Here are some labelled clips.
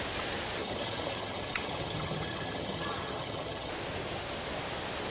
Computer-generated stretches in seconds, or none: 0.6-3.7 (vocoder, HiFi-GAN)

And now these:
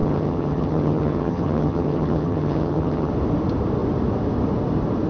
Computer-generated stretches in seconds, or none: 0.0-3.1 (vocoder, HiFi-GAN)